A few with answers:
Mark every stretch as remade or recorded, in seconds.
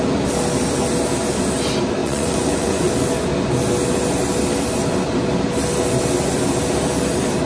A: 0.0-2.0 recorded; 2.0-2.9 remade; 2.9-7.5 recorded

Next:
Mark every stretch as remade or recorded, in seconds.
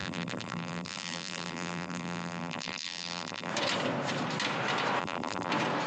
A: 0.0-3.5 remade; 3.5-5.0 recorded; 5.0-5.5 remade; 5.5-5.9 recorded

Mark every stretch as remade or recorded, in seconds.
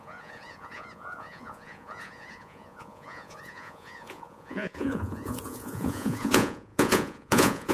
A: 0.0-7.7 remade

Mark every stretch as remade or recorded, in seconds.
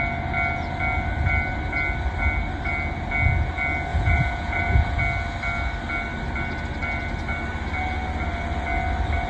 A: 0.0-3.9 recorded; 3.9-5.0 remade; 5.0-9.3 recorded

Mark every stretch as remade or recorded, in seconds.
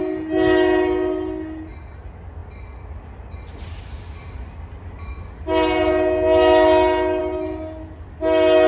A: 0.0-8.7 recorded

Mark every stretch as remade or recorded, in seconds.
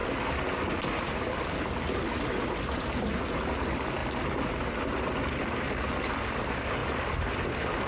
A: 0.0-7.9 recorded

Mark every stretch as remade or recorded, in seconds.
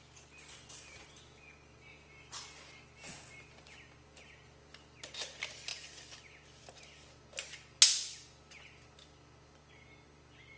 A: 0.0-10.6 recorded